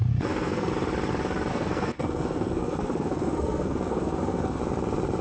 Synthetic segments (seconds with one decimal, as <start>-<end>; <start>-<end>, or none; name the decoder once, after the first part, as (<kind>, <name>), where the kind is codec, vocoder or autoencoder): 0.0-0.7 (codec, SNAC); 1.5-4.6